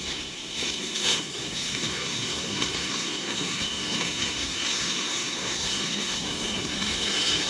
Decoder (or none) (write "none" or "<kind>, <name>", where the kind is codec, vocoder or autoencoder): codec, SNAC